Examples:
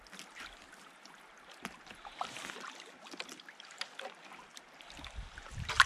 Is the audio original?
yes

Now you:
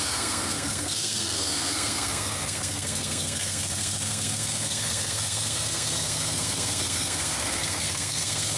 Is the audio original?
no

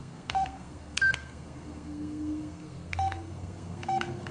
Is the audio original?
no